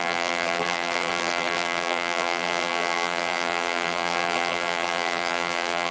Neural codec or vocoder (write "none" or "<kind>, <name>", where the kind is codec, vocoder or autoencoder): vocoder, BigVGAN v2